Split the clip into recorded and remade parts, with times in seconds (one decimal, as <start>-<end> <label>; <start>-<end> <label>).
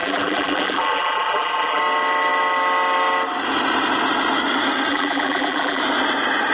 0.0-1.8 remade; 1.8-4.9 recorded; 4.9-5.8 remade; 5.8-6.5 recorded